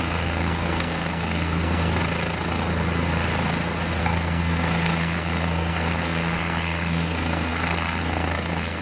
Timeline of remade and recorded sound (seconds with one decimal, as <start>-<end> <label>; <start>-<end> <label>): 0.0-2.0 remade; 2.0-4.0 recorded; 4.0-8.8 remade

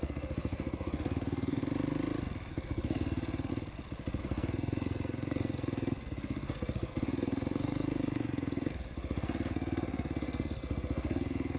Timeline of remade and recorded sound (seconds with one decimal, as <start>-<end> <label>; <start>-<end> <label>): 0.0-1.6 remade; 1.6-2.5 recorded; 2.5-3.5 remade; 3.5-4.2 recorded; 4.2-11.6 remade